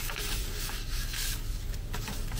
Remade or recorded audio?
remade